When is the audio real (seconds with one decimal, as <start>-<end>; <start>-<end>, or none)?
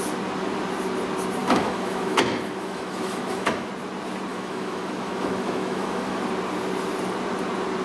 0.0-1.4; 3.7-4.3; 6.2-7.8